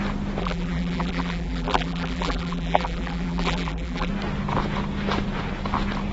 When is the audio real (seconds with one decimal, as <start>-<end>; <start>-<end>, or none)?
0.0-0.4; 4.1-6.1